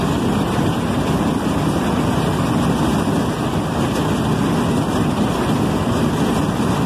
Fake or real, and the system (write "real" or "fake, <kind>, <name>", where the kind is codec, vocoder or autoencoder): real